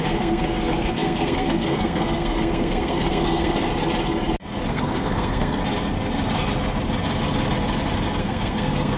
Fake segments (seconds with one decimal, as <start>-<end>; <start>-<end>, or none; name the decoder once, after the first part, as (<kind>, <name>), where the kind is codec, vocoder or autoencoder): 0.0-3.7 (codec, SNAC); 4.7-5.6; 8.2-9.0